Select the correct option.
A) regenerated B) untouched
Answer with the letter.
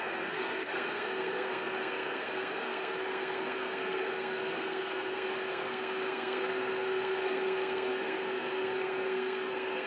A